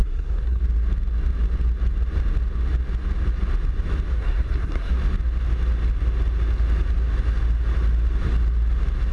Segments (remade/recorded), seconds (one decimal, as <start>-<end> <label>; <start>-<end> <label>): 0.0-0.6 remade; 0.6-4.1 recorded; 4.1-4.9 remade; 4.9-9.1 recorded